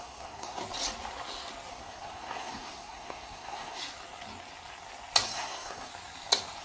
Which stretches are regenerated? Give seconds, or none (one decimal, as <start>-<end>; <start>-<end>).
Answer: 0.0-0.6; 1.7-3.8; 5.3-5.9